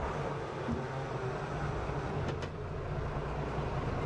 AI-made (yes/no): no